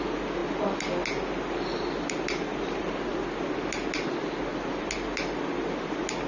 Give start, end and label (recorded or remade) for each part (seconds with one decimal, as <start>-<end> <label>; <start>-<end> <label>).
0.0-6.3 recorded